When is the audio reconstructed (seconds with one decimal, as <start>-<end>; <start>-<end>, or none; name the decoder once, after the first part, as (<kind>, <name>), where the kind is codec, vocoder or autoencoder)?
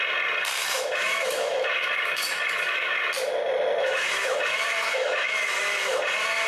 0.6-3.1 (autoencoder, DAC-VAE); 3.8-6.0